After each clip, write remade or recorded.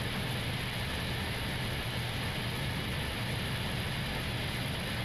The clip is recorded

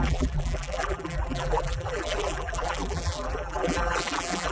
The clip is remade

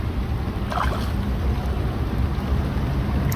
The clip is recorded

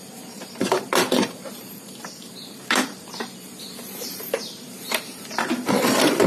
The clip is remade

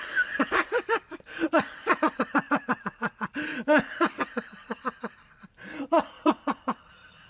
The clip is remade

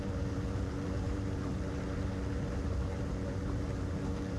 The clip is remade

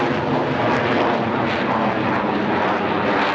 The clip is recorded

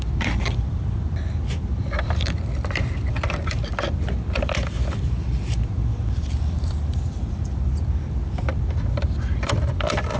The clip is remade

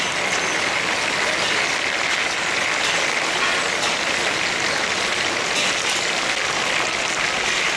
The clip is recorded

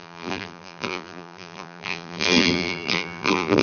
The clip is remade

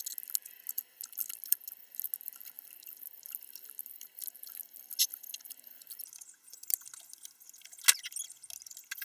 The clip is recorded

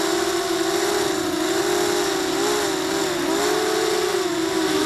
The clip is recorded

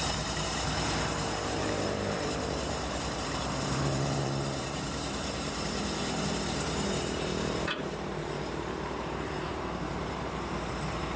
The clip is remade